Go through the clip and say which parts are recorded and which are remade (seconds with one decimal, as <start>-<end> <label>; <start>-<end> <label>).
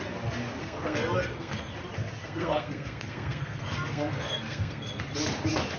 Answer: 0.0-0.6 recorded; 0.6-1.7 remade; 1.7-2.2 recorded; 2.2-5.0 remade; 5.0-5.8 recorded